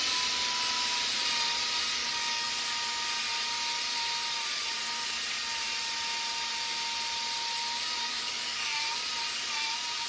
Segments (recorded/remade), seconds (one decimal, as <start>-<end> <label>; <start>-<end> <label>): 0.0-2.0 recorded; 2.0-2.5 remade; 2.5-8.0 recorded; 8.0-8.8 remade; 8.8-10.1 recorded